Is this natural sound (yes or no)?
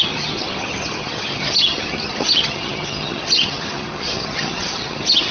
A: no